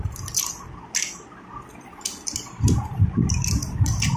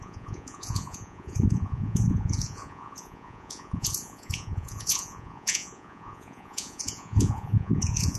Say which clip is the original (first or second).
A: first